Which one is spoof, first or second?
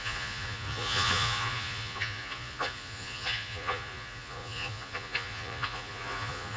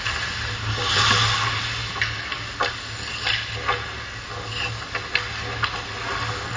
first